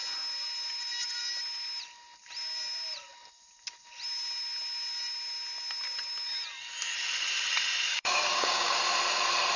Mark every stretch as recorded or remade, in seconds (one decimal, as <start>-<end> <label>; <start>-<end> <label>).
0.0-7.9 recorded; 7.9-8.8 remade; 8.8-9.6 recorded